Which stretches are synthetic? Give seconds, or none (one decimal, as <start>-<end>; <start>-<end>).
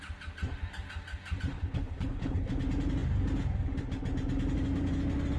1.5-2.5